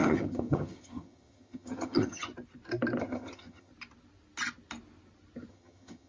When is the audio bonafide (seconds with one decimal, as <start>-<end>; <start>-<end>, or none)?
2.3-3.0; 3.7-5.5